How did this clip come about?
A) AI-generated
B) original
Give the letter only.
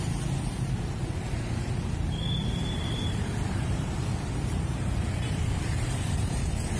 A